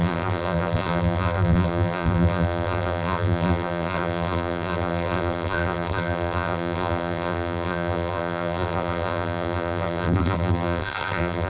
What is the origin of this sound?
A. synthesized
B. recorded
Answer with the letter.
A